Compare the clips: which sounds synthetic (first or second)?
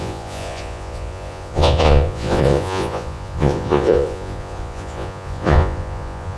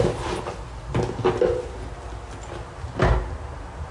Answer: first